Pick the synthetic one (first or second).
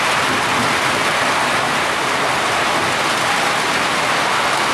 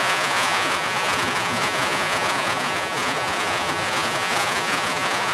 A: second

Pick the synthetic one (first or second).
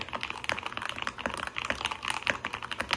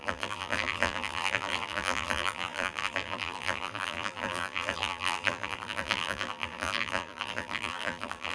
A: second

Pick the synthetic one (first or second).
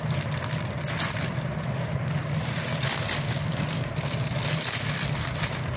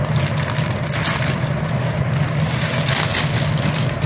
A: first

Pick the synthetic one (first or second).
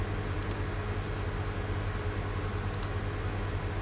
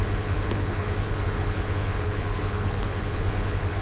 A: second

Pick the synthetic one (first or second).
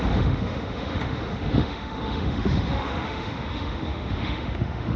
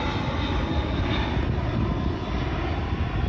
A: first